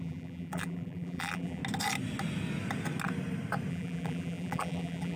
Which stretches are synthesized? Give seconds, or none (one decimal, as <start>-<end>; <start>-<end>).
0.0-1.6; 3.7-5.2